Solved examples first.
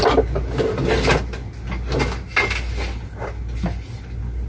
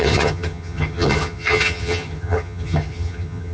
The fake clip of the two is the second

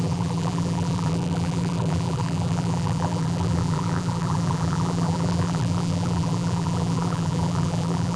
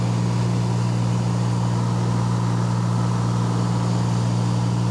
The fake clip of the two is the first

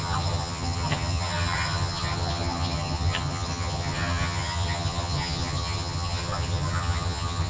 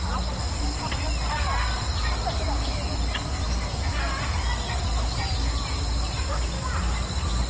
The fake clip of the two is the first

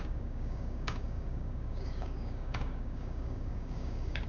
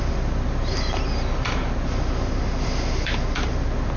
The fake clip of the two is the first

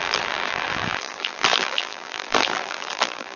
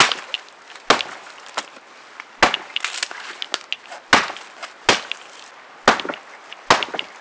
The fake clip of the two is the first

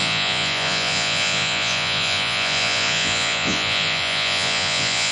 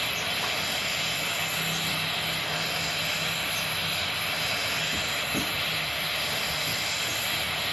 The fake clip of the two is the first